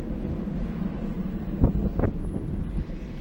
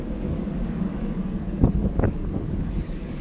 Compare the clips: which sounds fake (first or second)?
second